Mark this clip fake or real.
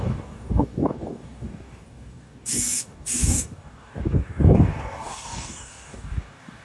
fake